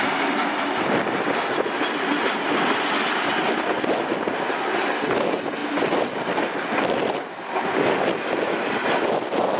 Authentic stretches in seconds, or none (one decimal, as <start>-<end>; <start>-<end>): 0.0-9.6